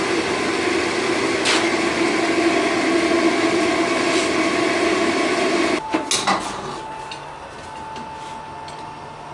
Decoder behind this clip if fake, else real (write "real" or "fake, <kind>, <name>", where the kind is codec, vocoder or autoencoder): real